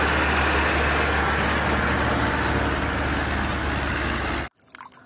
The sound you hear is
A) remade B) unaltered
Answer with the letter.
B